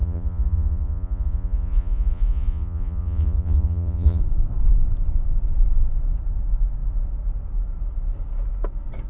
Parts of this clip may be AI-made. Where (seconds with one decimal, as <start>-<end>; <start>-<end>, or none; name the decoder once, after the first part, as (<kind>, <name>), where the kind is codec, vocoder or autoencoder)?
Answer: 0.0-4.2 (vocoder, Vocos)